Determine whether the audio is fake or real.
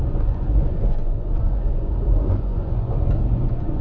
fake